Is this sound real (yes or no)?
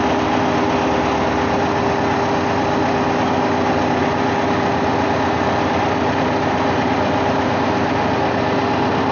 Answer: yes